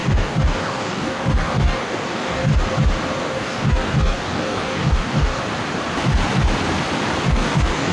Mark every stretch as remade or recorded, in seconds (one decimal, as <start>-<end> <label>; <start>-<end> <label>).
0.0-2.5 remade; 2.5-3.2 recorded; 3.2-5.4 remade; 5.4-7.3 recorded; 7.3-7.9 remade